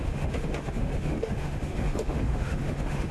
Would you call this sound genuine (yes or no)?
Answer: no